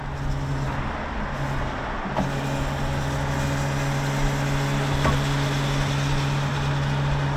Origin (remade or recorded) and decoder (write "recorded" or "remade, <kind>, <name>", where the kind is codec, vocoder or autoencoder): recorded